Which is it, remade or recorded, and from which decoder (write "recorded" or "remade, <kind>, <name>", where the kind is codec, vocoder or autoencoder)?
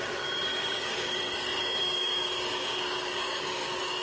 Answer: remade, codec, DAC